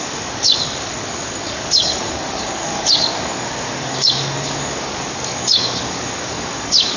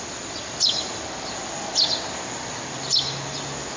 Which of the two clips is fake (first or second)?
first